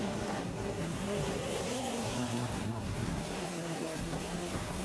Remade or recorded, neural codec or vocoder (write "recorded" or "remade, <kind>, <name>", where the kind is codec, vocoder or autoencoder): remade, codec, SNAC